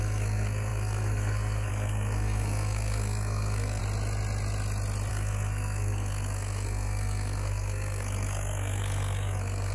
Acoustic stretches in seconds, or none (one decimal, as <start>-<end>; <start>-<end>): 3.8-5.1